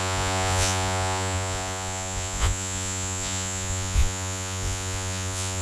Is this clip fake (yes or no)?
yes